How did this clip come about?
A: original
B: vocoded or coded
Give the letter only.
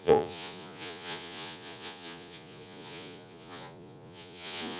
B